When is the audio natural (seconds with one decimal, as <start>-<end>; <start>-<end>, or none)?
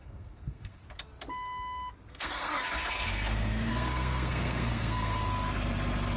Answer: 0.8-2.1; 2.5-3.7; 5.2-6.2